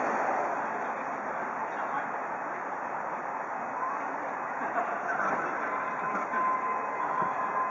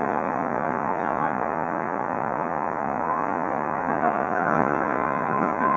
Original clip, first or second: first